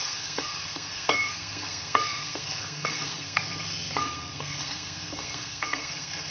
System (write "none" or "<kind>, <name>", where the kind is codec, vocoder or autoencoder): codec, SNAC